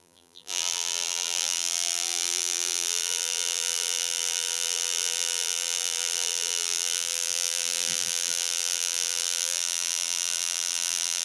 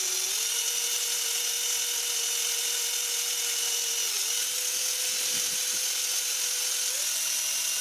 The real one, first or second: second